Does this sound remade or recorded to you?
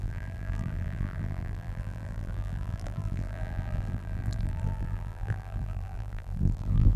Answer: remade